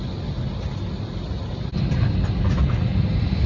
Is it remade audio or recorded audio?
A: recorded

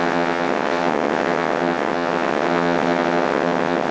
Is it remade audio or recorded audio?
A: remade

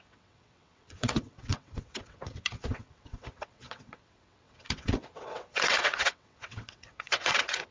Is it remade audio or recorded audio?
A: remade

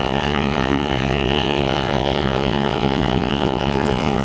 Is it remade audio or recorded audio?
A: remade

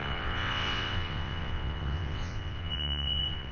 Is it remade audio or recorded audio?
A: remade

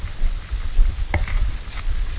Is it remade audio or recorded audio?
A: recorded